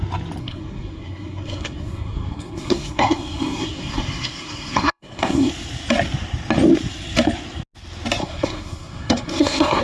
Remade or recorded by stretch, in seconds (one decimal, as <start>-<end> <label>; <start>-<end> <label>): 0.0-0.4 recorded; 0.4-5.5 remade; 5.5-8.2 recorded; 8.2-9.8 remade